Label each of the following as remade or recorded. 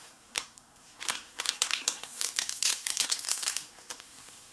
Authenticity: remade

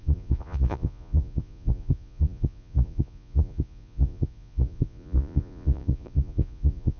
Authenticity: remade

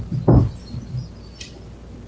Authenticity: recorded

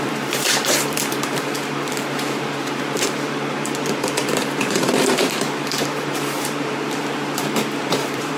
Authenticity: remade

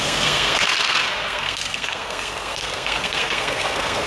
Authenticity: remade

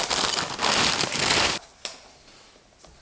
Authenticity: recorded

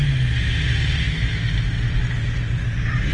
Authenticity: recorded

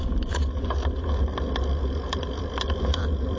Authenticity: recorded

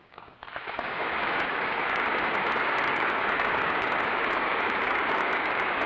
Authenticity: remade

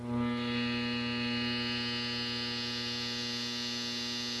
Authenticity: recorded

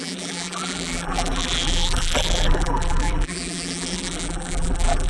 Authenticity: remade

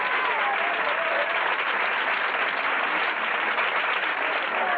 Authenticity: recorded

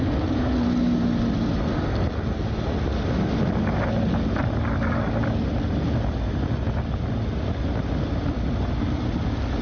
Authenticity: recorded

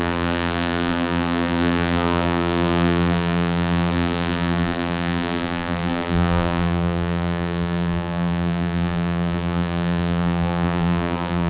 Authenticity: remade